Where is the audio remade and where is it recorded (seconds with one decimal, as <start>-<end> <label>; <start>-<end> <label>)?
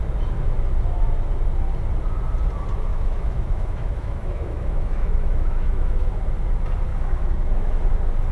0.0-2.9 recorded; 2.9-6.1 remade; 6.1-6.9 recorded; 6.9-7.9 remade; 7.9-8.3 recorded